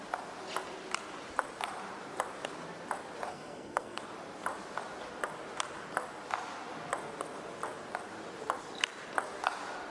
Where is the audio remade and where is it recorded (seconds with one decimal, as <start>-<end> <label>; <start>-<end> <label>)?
0.0-3.3 recorded; 3.3-4.0 remade; 4.0-9.9 recorded